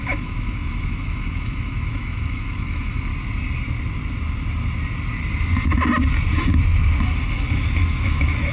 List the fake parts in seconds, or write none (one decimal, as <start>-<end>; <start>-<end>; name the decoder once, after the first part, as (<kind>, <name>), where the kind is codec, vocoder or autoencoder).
0.0-3.1 (autoencoder, DAC-VAE); 7.3-8.5